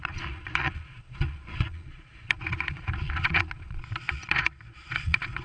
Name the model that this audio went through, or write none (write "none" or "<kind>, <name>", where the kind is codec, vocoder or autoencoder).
vocoder, Vocos